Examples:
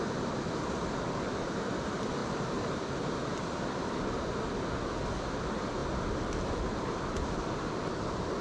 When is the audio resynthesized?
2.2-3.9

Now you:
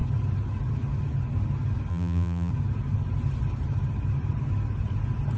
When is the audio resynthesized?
1.9-2.5